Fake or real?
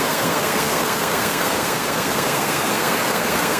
fake